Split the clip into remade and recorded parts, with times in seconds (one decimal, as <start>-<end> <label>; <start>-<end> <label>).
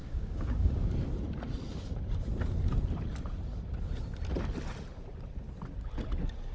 0.0-0.9 remade; 0.9-6.5 recorded